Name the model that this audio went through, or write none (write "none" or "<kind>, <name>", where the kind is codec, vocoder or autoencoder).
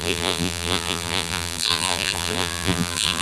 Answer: vocoder, BigVGAN v2